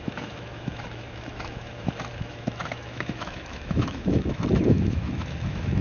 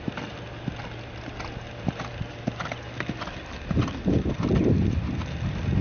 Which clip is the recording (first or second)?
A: second